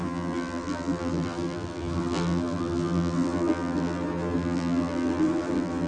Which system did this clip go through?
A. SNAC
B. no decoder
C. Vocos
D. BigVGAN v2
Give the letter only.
D